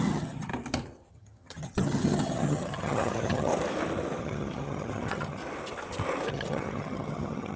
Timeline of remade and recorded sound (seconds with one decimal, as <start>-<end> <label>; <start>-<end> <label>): 0.0-0.5 remade; 0.5-1.1 recorded; 1.1-3.5 remade; 3.5-4.2 recorded; 4.2-5.4 remade; 5.4-6.3 recorded; 6.3-7.6 remade